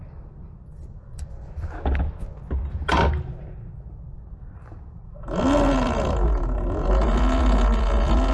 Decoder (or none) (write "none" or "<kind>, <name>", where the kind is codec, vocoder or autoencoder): none